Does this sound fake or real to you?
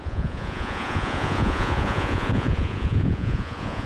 fake